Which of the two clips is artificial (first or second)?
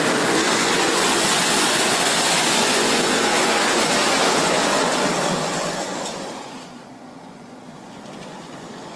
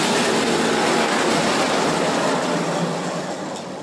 first